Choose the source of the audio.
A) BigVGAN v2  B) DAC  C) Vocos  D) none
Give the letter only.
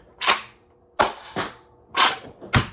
D